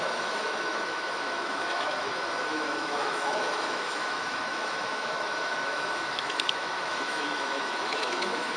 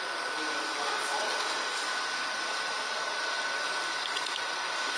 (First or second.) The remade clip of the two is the first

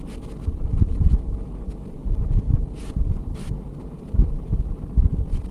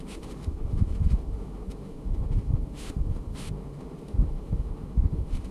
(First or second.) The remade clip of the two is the second